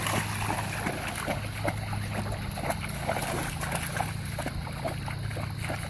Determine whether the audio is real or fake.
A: real